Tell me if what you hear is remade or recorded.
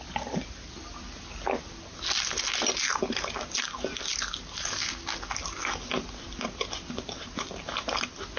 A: recorded